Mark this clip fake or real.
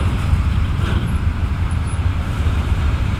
fake